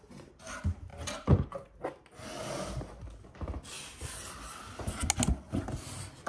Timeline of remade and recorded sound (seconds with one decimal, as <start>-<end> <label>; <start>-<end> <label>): 0.0-6.3 recorded